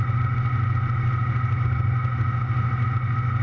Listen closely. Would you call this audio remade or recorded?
recorded